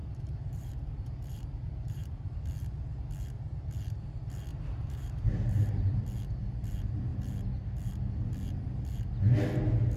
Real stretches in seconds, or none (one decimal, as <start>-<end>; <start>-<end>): 2.4-4.5; 6.0-10.0